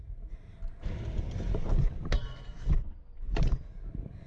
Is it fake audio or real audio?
real